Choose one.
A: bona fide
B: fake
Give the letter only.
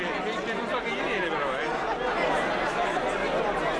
A